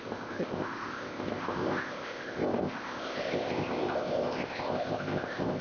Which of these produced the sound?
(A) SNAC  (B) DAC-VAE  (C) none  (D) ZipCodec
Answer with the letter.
D